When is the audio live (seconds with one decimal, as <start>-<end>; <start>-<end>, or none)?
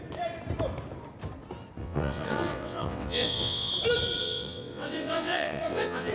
0.0-1.8; 3.7-4.2